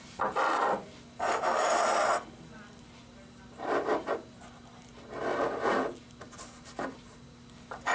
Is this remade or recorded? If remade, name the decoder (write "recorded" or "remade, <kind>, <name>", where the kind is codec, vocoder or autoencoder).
recorded